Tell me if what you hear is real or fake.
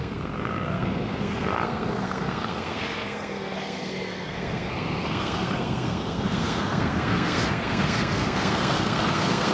fake